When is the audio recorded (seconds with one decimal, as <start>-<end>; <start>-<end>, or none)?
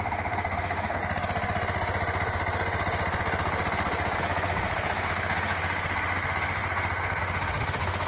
1.0-4.2